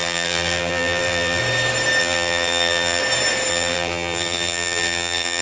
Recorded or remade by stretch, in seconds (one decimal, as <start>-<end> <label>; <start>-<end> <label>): 0.0-1.4 remade; 1.4-2.0 recorded; 2.0-3.0 remade; 3.0-3.5 recorded; 3.5-5.4 remade